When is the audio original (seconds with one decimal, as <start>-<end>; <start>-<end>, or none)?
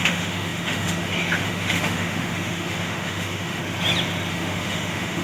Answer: 3.6-4.3